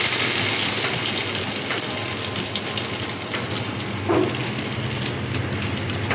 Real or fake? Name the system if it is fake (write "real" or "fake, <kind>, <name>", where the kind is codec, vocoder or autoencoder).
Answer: real